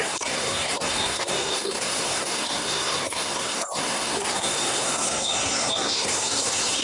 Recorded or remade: remade